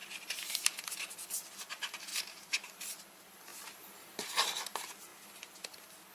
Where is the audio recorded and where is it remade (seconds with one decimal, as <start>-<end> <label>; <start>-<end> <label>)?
0.0-2.1 recorded; 2.1-2.9 remade; 2.9-6.1 recorded